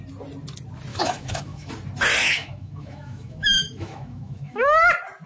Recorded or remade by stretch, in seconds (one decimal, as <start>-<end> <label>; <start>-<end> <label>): 0.0-0.9 recorded; 0.9-1.7 remade; 1.7-2.2 recorded; 2.2-4.8 remade; 4.8-5.3 recorded